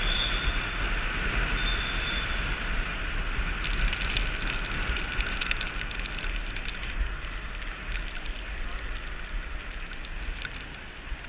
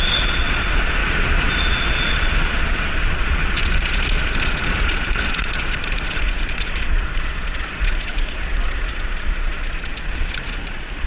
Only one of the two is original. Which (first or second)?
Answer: first